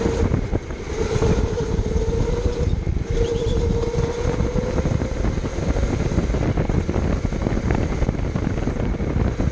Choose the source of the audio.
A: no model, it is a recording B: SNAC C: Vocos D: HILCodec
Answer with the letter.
A